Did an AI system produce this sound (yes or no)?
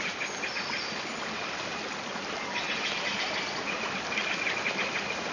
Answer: no